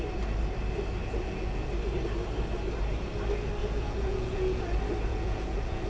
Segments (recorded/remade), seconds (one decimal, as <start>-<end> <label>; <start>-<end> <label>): 0.0-1.0 recorded; 1.0-1.7 remade; 1.7-3.6 recorded; 3.6-4.6 remade; 4.6-5.1 recorded; 5.1-5.9 remade